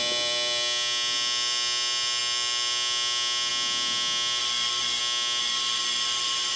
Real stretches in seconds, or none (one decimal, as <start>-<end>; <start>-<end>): 0.0-4.4; 5.0-5.4